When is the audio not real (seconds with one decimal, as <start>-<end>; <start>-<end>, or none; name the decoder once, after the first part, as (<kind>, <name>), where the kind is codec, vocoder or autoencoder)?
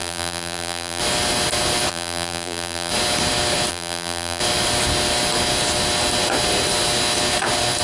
0.0-1.0 (vocoder, BigVGAN v2); 1.9-2.9; 3.7-4.4